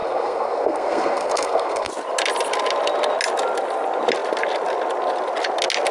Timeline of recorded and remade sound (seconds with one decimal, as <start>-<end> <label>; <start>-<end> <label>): 0.0-1.9 remade; 1.9-5.9 recorded